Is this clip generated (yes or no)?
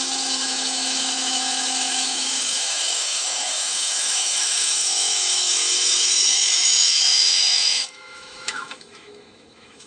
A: yes